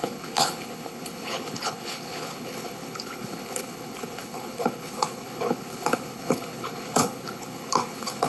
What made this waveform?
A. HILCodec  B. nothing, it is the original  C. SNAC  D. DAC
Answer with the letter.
A